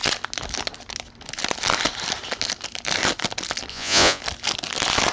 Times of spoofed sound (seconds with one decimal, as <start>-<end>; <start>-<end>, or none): 3.7-4.2